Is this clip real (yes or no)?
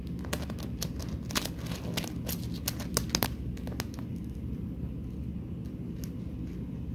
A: yes